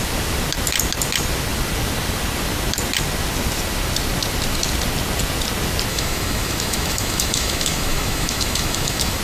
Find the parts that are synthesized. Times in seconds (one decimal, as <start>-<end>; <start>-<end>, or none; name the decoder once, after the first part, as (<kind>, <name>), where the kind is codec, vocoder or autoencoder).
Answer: 5.9-9.2 (autoencoder, DAC-VAE)